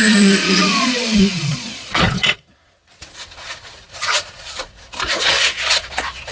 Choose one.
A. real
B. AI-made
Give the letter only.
B